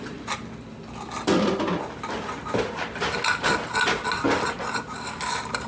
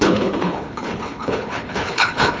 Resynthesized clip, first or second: second